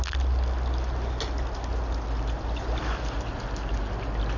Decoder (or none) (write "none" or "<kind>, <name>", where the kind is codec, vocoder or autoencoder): none